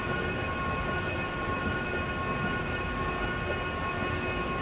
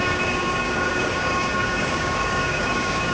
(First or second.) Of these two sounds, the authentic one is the first